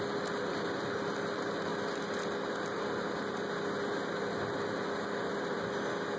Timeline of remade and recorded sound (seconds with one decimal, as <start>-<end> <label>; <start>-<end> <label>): 0.0-6.2 recorded